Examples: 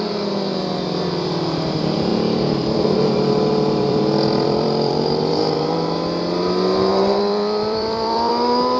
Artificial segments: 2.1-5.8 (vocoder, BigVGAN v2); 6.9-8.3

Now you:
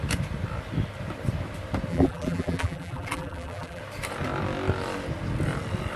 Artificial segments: 1.9-3.8 (vocoder, BigVGAN v2)

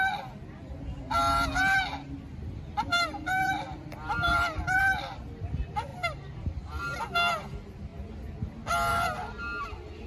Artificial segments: 2.3-4.8 (vocoder, BigVGAN v2); 5.9-6.9

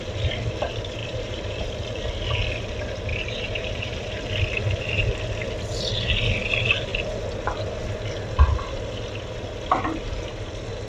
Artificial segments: 1.0-1.8 (vocoder, BigVGAN v2); 3.1-4.2

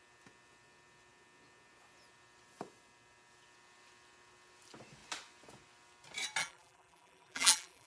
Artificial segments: 6.4-7.9 (vocoder, BigVGAN v2)